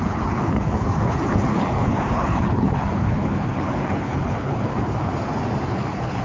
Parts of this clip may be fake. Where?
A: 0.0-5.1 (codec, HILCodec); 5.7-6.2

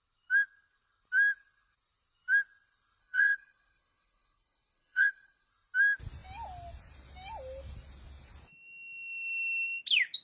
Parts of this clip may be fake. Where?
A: 3.0-5.5 (codec, HILCodec)

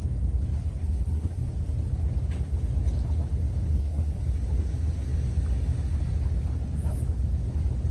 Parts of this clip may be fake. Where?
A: 0.8-1.5 (codec, SNAC); 3.7-4.2